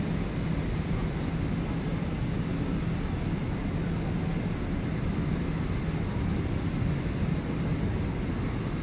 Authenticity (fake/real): real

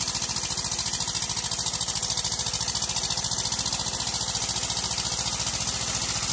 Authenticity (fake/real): real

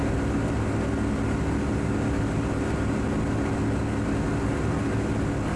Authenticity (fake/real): real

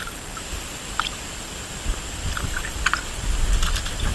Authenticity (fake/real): fake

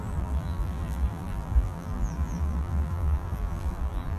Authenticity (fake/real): fake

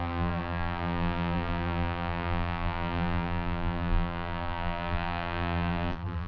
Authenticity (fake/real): fake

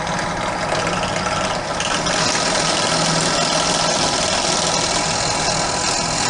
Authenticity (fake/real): real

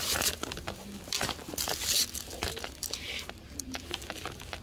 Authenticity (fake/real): real